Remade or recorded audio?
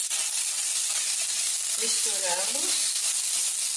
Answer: recorded